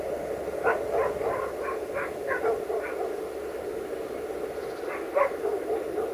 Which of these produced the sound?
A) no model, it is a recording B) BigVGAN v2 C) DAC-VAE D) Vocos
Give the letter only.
A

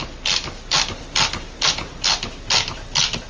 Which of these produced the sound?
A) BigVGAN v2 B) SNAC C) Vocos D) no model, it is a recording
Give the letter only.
D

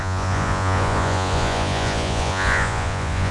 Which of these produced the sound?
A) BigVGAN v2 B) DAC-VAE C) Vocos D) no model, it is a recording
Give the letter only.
C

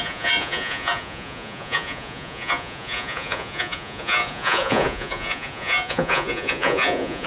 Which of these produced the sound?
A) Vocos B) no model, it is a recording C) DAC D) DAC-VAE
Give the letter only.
A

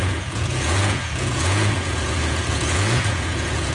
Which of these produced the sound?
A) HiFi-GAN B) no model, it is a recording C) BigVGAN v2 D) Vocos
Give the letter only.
D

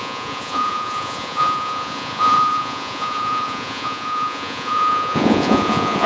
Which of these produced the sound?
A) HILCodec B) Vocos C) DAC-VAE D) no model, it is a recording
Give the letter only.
B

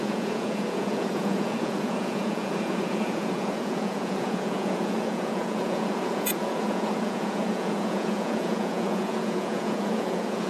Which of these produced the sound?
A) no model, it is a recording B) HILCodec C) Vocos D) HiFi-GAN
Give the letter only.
C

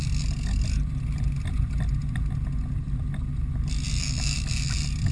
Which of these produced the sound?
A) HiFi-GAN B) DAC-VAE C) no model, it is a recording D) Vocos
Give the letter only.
C